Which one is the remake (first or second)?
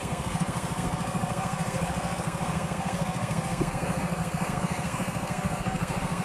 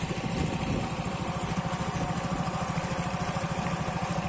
first